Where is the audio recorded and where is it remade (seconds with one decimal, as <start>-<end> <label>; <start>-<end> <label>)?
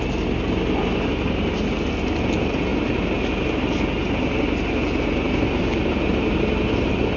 0.0-7.2 recorded